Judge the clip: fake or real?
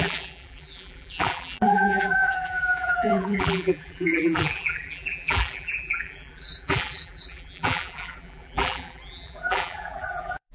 fake